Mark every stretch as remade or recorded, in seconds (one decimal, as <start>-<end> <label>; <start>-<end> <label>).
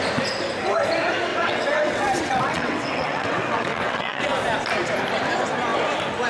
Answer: 0.0-1.3 recorded; 1.3-4.3 remade; 4.3-6.3 recorded